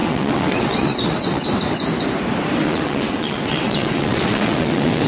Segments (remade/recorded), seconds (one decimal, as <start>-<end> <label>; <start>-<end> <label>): 0.0-1.6 remade; 1.6-2.6 recorded; 2.6-5.1 remade